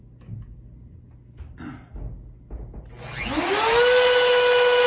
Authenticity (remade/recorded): recorded